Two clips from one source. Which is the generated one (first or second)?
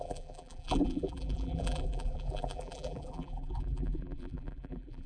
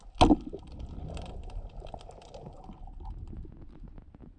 first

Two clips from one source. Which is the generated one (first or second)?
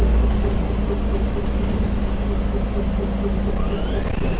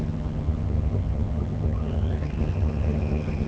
second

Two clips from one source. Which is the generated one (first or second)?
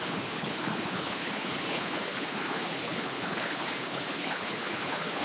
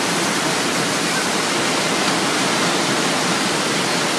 first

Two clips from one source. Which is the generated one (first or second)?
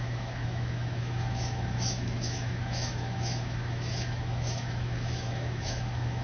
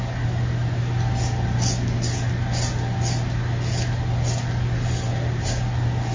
first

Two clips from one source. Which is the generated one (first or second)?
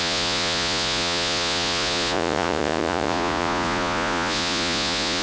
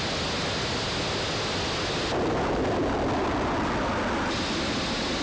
first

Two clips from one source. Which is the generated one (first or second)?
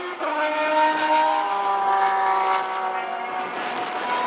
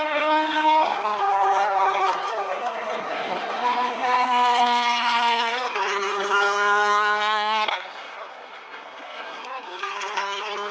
second